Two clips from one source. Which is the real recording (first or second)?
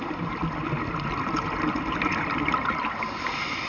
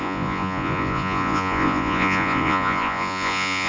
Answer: first